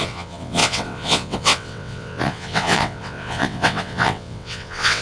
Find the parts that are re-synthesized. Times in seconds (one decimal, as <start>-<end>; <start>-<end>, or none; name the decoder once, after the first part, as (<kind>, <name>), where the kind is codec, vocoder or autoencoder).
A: 0.0-5.0 (vocoder, WaveNeXt)